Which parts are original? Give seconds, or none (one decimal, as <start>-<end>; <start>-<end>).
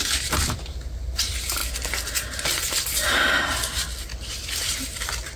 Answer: 0.0-5.4